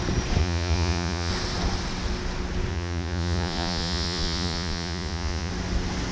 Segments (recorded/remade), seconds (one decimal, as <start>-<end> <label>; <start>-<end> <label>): 0.0-0.4 recorded; 0.4-1.3 remade; 1.3-2.7 recorded; 2.7-5.5 remade; 5.5-6.1 recorded